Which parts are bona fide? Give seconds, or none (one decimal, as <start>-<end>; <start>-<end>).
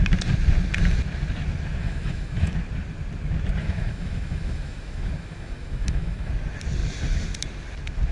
0.0-1.8; 2.5-3.6; 6.3-8.1